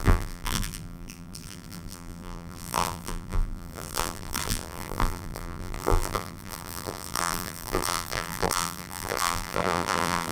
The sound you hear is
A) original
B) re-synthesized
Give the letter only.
B